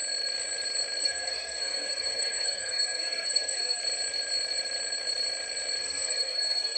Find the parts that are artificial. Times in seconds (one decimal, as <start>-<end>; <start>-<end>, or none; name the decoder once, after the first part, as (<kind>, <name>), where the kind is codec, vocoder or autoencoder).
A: 1.0-3.8 (codec, SNAC); 5.8-6.8